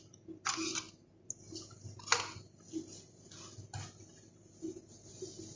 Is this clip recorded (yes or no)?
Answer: yes